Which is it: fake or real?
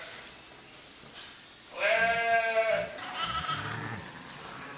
real